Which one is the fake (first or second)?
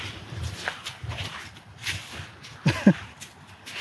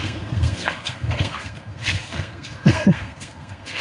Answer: second